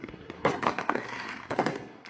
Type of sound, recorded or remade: remade